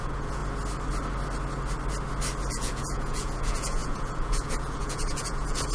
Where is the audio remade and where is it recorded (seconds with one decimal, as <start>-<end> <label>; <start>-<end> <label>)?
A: 0.0-0.4 remade; 0.4-2.5 recorded; 2.5-5.7 remade

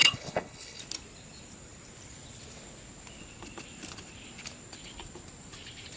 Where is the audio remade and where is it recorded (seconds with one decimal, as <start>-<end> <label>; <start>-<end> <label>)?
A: 0.0-0.8 remade; 0.8-6.0 recorded